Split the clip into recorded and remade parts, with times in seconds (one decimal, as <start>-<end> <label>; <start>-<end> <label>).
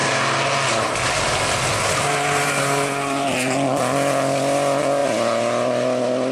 0.0-5.0 recorded; 5.0-6.3 remade